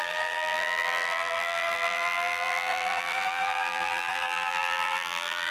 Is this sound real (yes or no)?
no